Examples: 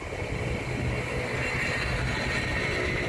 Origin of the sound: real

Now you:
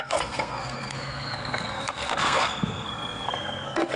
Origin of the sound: fake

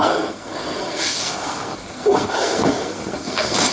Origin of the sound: fake